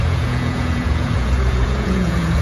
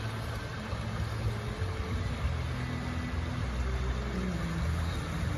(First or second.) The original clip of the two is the second